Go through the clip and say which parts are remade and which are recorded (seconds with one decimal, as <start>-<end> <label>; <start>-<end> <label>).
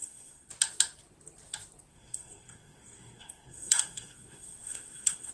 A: 0.0-0.5 remade; 0.5-1.9 recorded; 1.9-5.3 remade